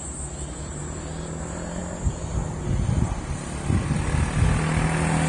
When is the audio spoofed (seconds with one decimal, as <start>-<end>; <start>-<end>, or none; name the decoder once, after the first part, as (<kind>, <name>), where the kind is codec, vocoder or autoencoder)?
none